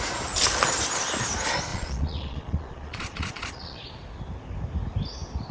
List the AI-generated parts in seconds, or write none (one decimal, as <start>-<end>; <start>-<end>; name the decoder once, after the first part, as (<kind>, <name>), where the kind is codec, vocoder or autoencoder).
1.7-3.9 (vocoder, Vocos)